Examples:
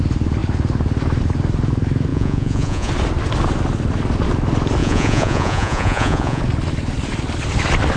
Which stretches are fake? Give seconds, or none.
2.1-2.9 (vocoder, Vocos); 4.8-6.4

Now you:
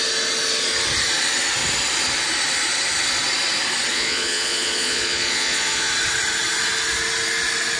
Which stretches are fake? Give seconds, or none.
3.9-5.9 (vocoder, Vocos)